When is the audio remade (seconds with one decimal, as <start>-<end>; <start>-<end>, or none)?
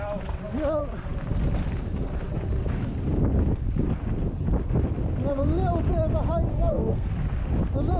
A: 6.5-7.1